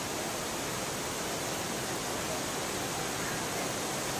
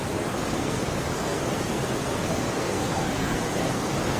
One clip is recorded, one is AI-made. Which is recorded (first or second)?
first